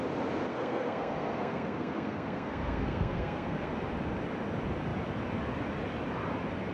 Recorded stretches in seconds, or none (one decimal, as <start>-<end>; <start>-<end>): 0.0-0.5; 3.7-6.7